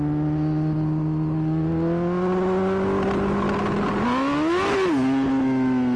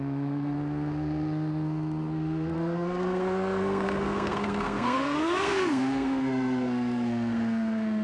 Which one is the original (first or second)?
first